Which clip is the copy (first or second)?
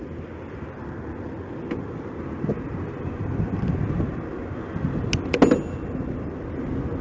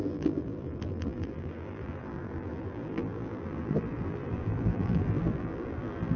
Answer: second